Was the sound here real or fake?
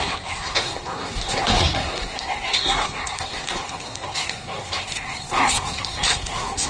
fake